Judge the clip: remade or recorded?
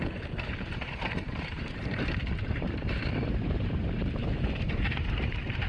remade